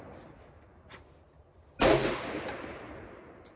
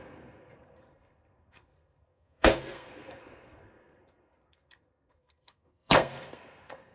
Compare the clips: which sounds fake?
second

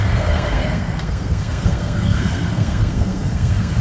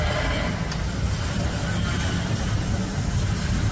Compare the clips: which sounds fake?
first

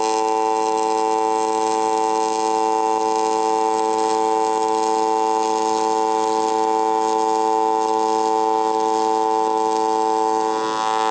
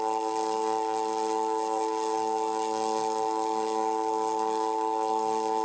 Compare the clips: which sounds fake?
second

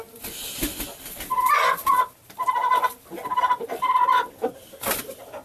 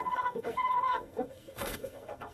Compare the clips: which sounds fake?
second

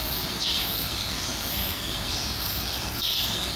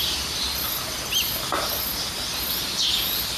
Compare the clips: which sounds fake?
first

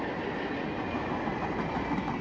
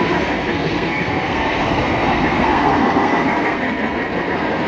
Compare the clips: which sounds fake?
second